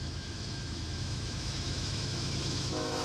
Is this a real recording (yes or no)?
no